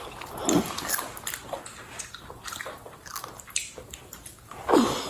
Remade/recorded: recorded